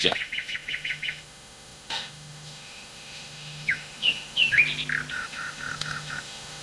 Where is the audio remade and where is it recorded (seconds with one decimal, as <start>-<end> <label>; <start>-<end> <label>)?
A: 0.0-4.6 remade; 4.6-5.1 recorded; 5.1-6.6 remade